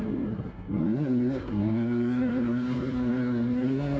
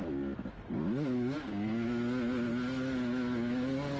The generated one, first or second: first